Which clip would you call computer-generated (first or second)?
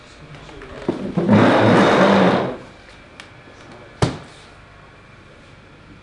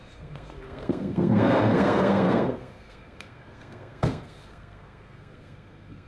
second